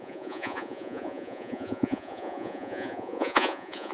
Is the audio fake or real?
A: fake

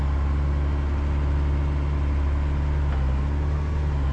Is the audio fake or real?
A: real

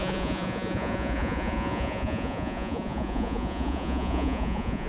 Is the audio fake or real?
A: fake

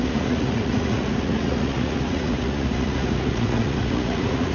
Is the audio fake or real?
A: fake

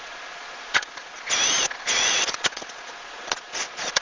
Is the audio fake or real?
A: fake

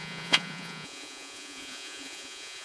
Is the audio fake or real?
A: fake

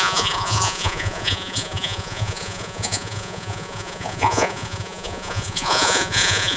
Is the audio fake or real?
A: fake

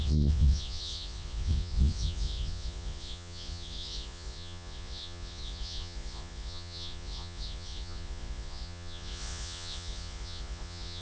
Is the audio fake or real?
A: fake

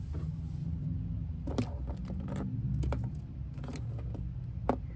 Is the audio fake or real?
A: real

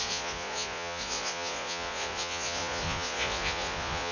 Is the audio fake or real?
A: fake